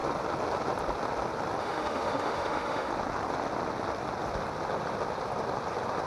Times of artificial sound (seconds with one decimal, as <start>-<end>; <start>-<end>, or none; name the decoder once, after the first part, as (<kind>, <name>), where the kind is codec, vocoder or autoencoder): 1.6-2.9 (autoencoder, DAC-VAE)

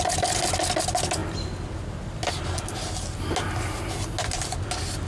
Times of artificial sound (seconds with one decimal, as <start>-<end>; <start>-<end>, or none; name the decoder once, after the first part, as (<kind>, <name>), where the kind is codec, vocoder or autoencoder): none